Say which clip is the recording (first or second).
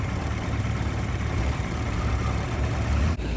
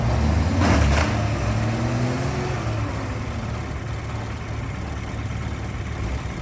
second